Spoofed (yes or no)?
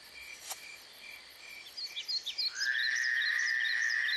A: no